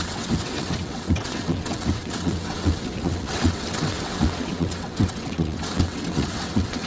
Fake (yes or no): yes